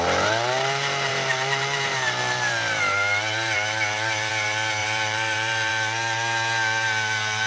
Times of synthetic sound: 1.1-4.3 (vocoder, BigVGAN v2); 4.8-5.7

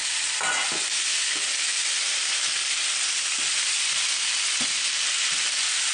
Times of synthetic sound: none

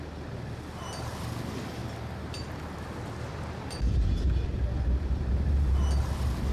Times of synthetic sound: none

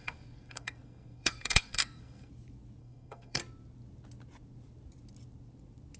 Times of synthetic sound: 0.0-2.3 (codec, SNAC); 2.8-3.4

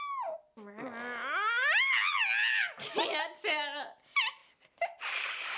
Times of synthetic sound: none

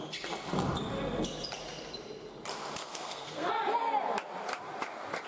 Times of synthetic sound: 2.8-3.5 (codec, SNAC)

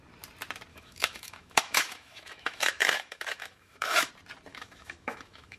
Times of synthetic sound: 0.7-4.1 (autoencoder, DAC-VAE); 4.5-5.6

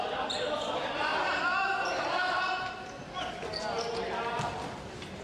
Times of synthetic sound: none